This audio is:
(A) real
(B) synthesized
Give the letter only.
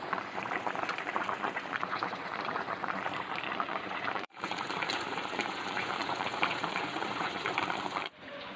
B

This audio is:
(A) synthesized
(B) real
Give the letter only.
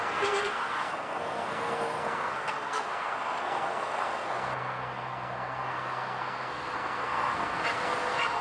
A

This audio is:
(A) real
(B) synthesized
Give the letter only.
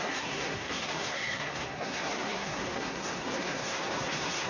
B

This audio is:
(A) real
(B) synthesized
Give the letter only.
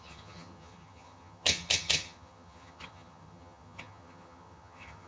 B